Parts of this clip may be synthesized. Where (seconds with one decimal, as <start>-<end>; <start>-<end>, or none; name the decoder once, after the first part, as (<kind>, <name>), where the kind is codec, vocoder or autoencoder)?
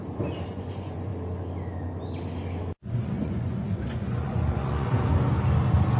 0.5-1.1 (vocoder, Vocos); 2.8-5.1